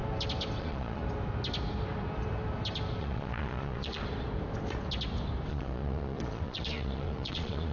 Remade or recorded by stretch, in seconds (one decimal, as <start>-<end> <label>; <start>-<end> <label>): 0.0-0.6 recorded; 0.6-1.0 remade; 1.0-3.0 recorded; 3.0-4.0 remade; 4.0-5.5 recorded; 5.5-7.7 remade